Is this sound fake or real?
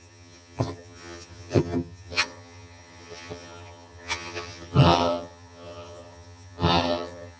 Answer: fake